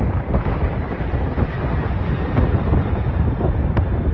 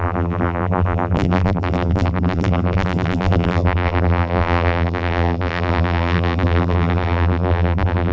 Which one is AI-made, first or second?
second